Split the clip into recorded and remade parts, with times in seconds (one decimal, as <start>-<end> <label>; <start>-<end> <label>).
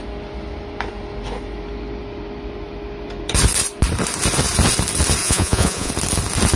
0.0-5.2 recorded; 5.2-5.9 remade; 5.9-6.6 recorded